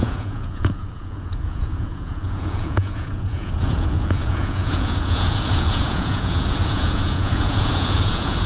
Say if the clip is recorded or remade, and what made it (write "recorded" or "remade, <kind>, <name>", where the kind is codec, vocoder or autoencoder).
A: remade, vocoder, Vocos